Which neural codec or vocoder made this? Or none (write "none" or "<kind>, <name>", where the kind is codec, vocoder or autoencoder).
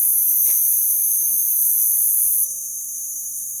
autoencoder, DAC-VAE